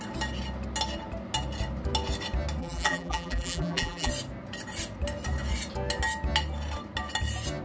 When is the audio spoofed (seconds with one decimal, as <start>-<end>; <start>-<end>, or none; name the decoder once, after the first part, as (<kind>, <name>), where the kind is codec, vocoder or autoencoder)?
2.6-4.1 (vocoder, BigVGAN v2)